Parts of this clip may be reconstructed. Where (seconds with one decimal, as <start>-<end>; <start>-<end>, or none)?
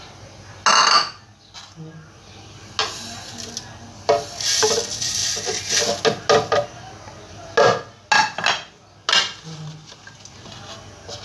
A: none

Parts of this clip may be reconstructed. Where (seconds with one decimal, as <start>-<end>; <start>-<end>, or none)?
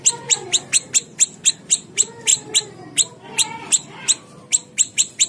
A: none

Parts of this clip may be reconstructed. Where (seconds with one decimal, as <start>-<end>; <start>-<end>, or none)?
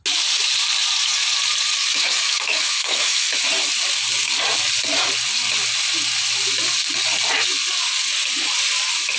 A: 1.8-3.4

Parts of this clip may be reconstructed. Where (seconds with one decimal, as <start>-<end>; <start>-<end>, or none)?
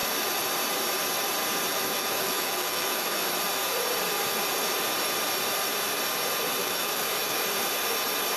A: 1.7-3.3; 6.6-7.4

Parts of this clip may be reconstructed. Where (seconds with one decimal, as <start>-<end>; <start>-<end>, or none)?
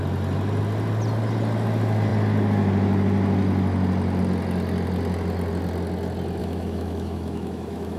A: 6.4-8.0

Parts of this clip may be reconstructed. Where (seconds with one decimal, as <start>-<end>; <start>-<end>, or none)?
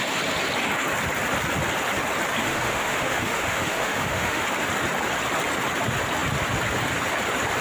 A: 2.4-4.4